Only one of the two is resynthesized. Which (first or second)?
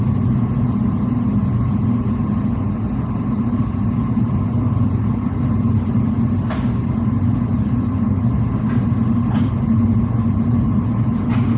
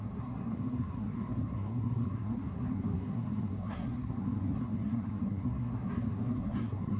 second